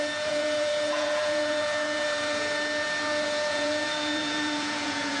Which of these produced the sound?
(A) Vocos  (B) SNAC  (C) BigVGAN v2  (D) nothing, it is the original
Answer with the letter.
A